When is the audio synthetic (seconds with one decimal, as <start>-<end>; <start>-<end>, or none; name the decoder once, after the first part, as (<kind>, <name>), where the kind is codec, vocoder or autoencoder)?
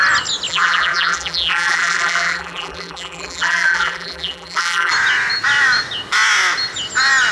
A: 0.5-4.9 (vocoder, BigVGAN v2)